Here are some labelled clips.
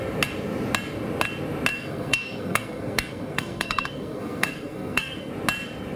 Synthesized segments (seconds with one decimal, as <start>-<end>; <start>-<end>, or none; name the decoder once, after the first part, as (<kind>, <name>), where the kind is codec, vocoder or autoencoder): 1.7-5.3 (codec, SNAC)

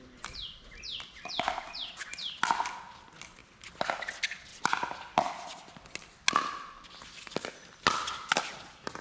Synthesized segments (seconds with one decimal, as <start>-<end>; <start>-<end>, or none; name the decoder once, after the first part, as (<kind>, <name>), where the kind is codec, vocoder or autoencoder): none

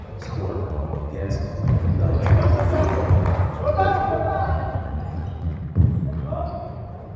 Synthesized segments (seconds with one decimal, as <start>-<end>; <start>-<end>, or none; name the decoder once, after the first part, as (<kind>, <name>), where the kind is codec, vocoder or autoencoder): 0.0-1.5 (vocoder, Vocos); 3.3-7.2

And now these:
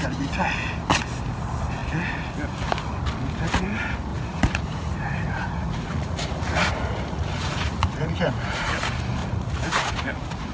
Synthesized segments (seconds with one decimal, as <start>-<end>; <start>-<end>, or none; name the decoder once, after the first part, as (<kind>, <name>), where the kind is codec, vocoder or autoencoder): 4.1-8.7 (vocoder, Vocos); 9.2-9.9

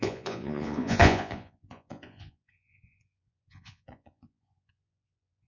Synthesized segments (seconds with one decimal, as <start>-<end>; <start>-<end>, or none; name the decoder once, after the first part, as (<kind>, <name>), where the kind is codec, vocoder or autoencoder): 0.0-5.5 (vocoder, Vocos)

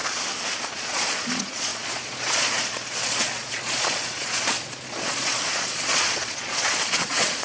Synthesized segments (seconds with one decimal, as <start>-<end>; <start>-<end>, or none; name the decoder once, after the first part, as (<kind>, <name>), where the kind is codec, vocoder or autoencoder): 0.6-7.4 (vocoder, Vocos)

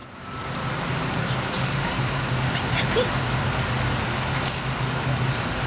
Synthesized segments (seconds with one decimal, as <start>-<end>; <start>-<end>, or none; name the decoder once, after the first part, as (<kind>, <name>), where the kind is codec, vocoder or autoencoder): 0.0-3.4 (vocoder, BigVGAN v2)